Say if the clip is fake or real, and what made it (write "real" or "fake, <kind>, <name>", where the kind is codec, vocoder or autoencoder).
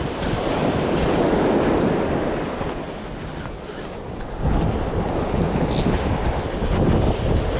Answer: real